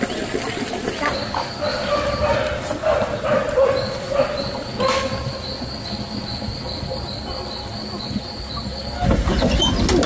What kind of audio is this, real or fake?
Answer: real